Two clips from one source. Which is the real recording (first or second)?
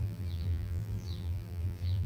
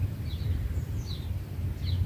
second